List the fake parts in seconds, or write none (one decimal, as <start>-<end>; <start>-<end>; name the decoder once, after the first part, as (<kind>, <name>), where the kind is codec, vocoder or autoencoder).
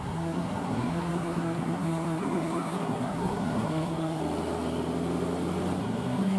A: 0.0-4.2 (codec, SNAC); 5.8-6.4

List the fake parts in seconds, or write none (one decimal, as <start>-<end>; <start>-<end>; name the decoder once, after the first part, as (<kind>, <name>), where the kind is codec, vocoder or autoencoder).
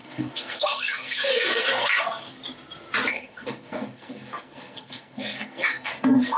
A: 0.0-2.4 (codec, SNAC); 3.1-6.4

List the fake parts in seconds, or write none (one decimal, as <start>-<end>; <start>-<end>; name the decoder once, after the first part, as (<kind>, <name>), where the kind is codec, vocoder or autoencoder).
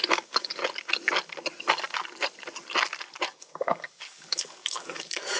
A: 0.0-0.6 (codec, DAC); 3.2-5.4